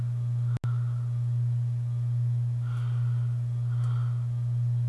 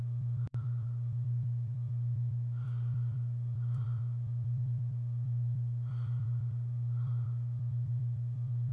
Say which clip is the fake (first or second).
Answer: second